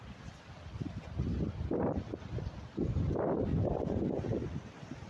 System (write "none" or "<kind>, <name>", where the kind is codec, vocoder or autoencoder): none